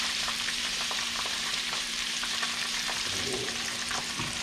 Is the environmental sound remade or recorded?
remade